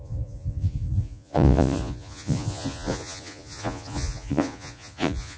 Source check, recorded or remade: remade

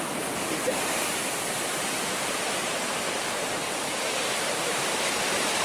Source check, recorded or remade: remade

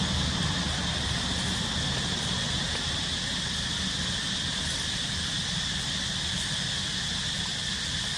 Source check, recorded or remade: recorded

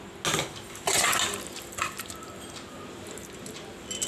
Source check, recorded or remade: recorded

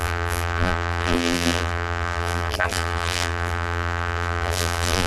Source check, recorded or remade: remade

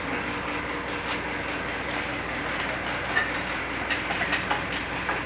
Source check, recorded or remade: recorded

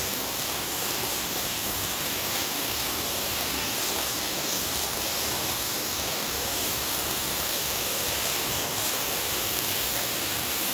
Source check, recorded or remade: remade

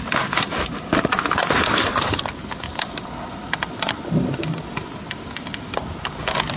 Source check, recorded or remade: recorded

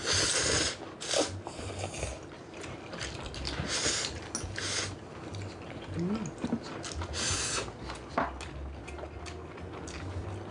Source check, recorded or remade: recorded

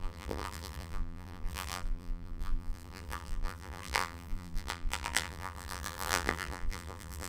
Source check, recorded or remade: remade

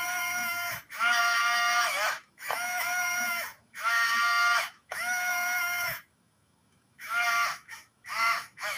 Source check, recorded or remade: remade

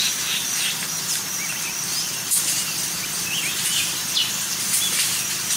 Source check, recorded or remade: recorded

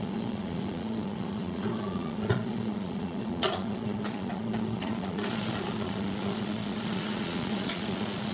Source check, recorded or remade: remade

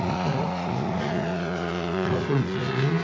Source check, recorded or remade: remade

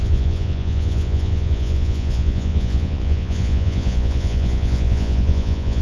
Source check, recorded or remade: remade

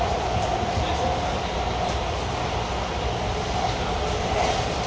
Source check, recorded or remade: recorded